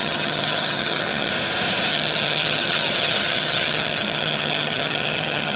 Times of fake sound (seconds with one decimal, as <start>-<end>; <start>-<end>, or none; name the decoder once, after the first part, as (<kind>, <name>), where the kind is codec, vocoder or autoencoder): 0.0-1.3 (vocoder, HiFi-GAN); 1.9-5.6